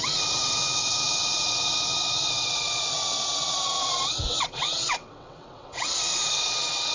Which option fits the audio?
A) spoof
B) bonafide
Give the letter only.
A